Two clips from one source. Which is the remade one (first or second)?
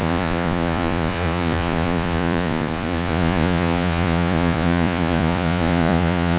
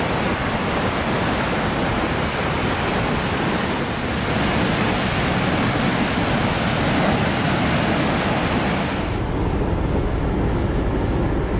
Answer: first